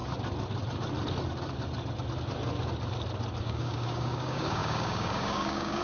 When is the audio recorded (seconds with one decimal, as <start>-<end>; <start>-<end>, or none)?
0.0-3.4

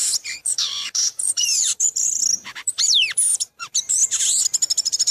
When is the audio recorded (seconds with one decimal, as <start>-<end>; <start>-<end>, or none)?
4.0-5.1

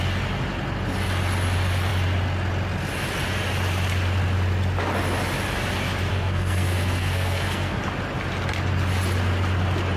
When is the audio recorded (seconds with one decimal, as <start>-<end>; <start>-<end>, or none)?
0.0-6.1; 7.8-10.0

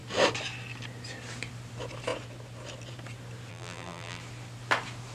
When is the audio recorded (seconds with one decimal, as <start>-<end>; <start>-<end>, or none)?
0.0-3.5; 4.2-5.1

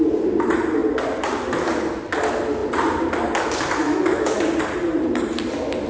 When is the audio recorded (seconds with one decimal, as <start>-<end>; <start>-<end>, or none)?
0.0-3.8; 4.4-5.9

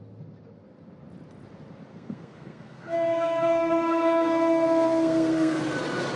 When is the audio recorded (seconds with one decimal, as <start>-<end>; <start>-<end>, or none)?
0.0-1.9; 5.6-6.2

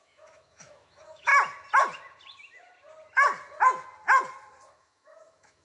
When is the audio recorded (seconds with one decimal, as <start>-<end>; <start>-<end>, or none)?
1.3-4.7